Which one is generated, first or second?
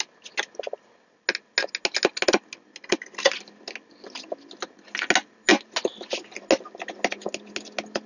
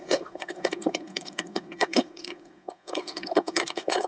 second